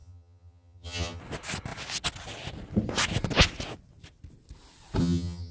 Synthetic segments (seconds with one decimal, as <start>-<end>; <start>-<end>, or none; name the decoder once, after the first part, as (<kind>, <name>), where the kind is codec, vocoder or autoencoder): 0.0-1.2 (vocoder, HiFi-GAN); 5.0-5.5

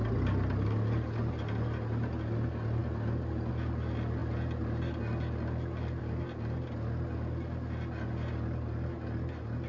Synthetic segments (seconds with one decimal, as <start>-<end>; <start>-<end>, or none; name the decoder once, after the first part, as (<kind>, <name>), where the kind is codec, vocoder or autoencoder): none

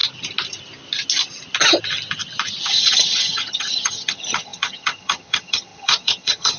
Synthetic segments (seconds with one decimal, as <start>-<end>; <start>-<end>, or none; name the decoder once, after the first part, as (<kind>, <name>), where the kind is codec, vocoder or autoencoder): 2.7-6.6 (vocoder, HiFi-GAN)